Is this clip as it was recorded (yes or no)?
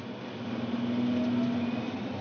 yes